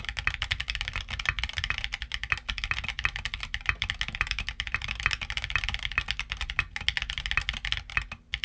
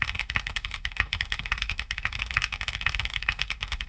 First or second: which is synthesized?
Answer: second